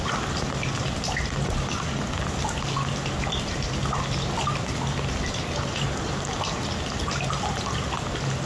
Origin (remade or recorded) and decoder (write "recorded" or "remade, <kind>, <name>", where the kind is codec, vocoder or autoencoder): recorded